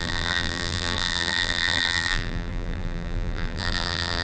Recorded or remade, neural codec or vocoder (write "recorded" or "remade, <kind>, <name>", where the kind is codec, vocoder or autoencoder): remade, vocoder, BigVGAN v2